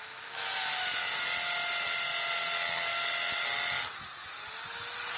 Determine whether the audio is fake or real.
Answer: real